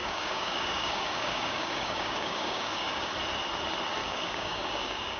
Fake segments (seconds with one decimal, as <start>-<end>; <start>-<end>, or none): 0.0-3.1; 4.0-5.2